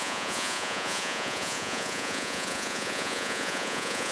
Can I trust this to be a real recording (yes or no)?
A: no